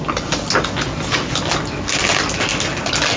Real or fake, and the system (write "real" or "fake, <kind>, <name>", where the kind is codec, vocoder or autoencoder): real